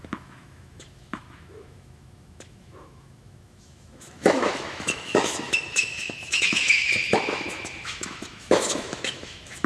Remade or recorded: remade